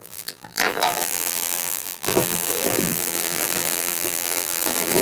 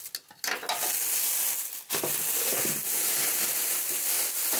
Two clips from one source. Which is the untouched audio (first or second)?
second